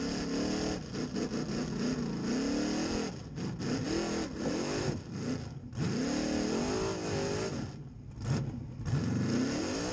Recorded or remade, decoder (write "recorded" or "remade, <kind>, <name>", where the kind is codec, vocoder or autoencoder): recorded